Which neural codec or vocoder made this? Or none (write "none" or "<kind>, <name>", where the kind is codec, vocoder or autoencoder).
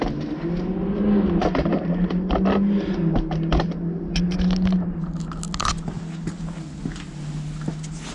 none